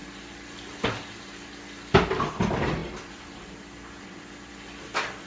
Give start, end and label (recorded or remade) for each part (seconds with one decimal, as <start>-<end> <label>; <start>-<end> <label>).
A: 0.0-5.3 recorded